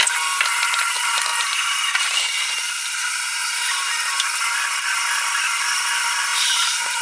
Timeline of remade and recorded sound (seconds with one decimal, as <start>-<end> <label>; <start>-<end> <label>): 0.0-1.3 recorded; 1.3-4.1 remade; 4.1-6.3 recorded; 6.3-7.0 remade